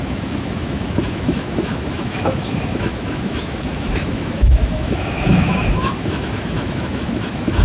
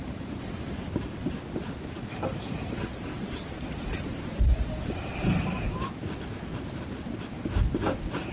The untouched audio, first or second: second